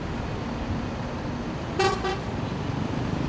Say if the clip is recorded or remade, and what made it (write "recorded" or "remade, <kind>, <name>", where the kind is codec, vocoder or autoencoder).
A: recorded